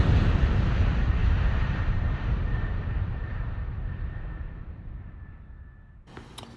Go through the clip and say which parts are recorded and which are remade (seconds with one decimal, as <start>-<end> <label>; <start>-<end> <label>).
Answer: 0.0-1.2 recorded; 1.2-5.1 remade; 5.1-6.6 recorded